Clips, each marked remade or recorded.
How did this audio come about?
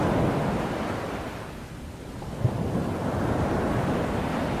recorded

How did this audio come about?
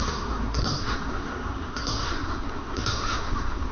remade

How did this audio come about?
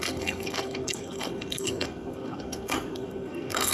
remade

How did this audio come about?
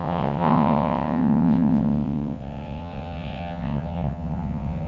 remade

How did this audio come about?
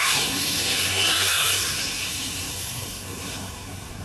remade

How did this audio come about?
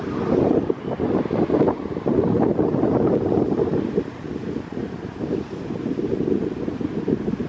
recorded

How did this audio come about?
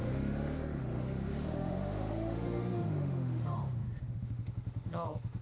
remade